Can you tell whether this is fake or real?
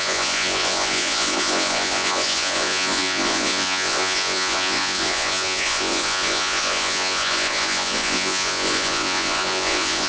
fake